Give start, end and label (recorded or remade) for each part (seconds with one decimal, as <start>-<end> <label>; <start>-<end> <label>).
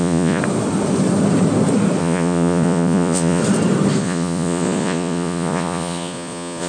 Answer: 0.0-0.4 remade; 0.4-2.0 recorded; 2.0-3.4 remade; 3.4-4.0 recorded; 4.0-6.7 remade